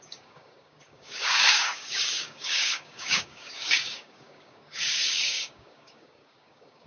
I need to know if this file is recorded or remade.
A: remade